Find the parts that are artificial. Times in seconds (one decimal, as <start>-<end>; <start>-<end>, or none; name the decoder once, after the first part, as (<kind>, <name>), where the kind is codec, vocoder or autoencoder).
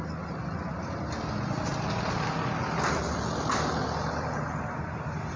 none